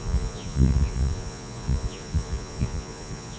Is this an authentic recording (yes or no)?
no